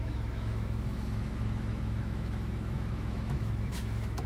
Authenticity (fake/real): fake